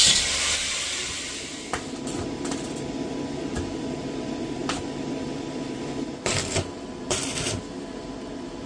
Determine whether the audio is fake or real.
fake